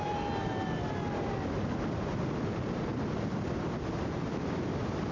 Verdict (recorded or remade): recorded